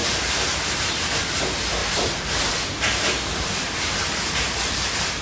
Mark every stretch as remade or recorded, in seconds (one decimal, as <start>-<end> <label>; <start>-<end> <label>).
0.0-1.1 remade; 1.1-1.8 recorded; 1.8-5.2 remade